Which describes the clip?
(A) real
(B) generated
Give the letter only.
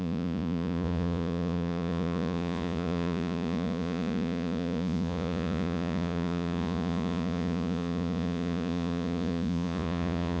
B